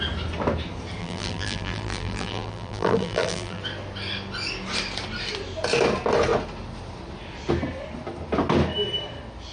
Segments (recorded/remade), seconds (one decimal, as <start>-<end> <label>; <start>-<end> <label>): 0.0-1.0 recorded; 1.0-3.6 remade; 3.6-9.5 recorded